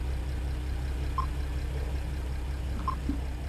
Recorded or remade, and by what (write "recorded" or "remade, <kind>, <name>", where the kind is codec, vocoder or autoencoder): recorded